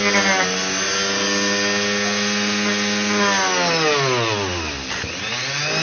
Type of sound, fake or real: real